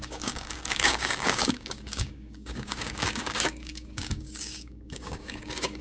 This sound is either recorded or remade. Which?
remade